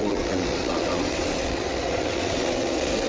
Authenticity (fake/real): fake